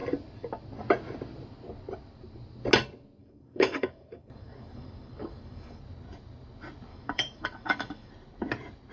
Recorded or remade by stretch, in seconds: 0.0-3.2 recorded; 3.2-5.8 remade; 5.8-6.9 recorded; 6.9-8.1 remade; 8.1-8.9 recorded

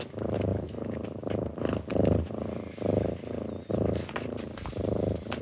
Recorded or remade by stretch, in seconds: 0.0-5.4 recorded

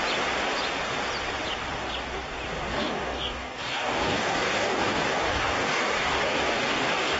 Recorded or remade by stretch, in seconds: 0.0-2.7 recorded; 2.7-7.2 remade

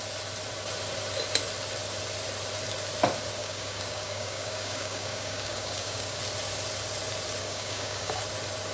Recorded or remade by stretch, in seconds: 0.0-3.4 recorded; 3.4-6.2 remade; 6.2-7.4 recorded; 7.4-8.2 remade; 8.2-8.7 recorded